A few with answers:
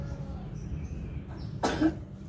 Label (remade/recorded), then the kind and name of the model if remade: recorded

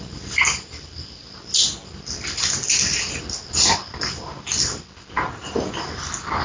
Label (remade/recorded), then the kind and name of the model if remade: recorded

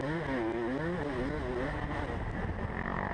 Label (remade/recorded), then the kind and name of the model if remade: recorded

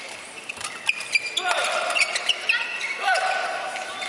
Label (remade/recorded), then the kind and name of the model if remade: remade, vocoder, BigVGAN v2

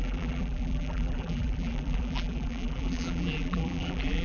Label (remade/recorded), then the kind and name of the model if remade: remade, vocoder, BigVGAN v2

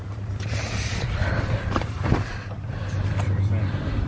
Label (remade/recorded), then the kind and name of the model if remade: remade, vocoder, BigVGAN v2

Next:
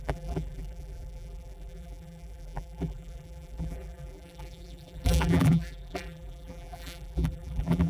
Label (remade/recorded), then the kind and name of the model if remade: remade, vocoder, BigVGAN v2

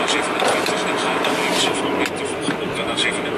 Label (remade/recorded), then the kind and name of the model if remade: recorded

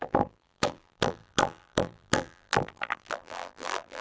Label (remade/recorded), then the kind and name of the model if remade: remade, vocoder, BigVGAN v2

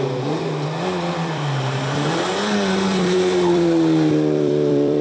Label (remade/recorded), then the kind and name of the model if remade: remade, vocoder, BigVGAN v2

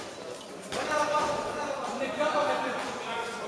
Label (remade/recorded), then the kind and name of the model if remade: remade, vocoder, BigVGAN v2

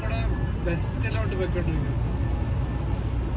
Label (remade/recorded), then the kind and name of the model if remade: recorded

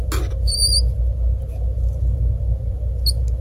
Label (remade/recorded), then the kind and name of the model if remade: recorded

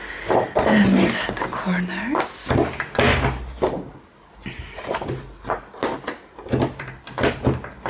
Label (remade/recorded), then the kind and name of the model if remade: recorded